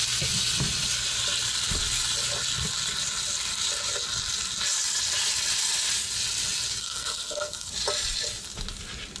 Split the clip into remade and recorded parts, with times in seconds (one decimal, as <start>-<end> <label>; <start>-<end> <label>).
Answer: 0.0-6.8 recorded; 6.8-7.7 remade; 7.7-9.2 recorded